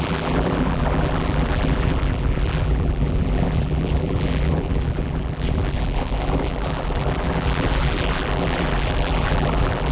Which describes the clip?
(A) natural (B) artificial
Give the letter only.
B